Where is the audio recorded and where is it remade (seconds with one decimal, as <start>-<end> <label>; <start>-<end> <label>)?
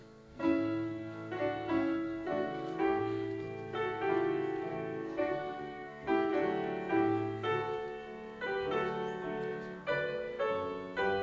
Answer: 0.0-3.0 remade; 3.0-4.7 recorded; 4.7-6.3 remade; 6.3-11.2 recorded